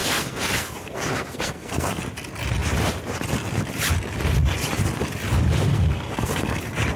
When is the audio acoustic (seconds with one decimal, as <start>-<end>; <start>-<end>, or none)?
2.0-5.7; 6.6-7.0